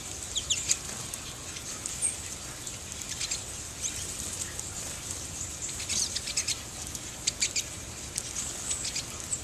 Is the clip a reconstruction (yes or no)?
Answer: no